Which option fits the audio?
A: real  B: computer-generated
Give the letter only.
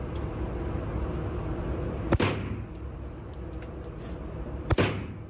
A